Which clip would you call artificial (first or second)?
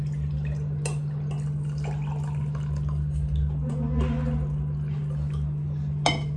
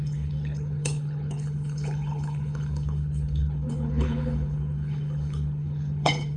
second